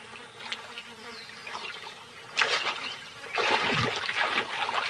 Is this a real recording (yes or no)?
yes